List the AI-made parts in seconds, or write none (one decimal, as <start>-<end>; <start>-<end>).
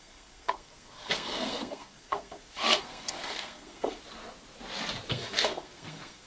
0.0-4.0; 5.1-6.3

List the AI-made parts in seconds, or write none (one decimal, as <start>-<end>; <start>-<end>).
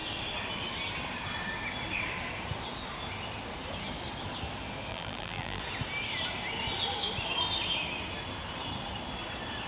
4.9-5.6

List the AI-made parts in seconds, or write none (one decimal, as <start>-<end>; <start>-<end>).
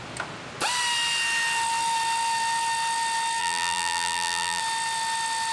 3.4-4.6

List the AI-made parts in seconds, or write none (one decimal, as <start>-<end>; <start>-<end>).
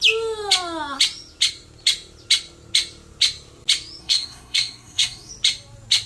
4.0-5.3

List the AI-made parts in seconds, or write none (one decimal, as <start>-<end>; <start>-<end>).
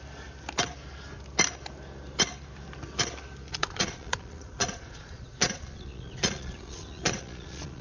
3.5-7.8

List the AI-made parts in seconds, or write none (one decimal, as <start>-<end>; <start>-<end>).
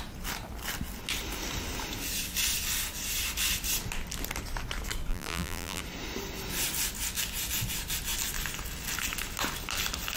5.1-5.8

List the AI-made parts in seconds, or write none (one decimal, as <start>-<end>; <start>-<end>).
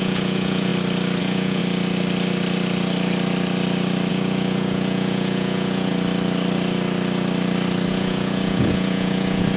0.0-0.7; 1.2-1.6; 4.1-5.9; 7.9-9.6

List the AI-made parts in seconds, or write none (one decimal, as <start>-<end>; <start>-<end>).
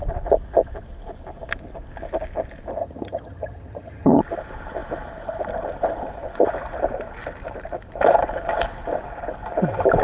2.8-4.2